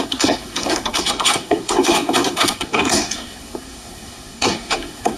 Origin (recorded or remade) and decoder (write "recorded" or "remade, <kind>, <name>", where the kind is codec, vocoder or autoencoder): remade, codec, SNAC